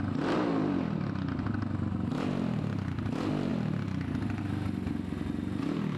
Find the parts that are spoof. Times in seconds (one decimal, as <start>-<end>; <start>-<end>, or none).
none